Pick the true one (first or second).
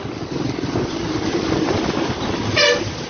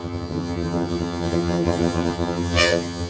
first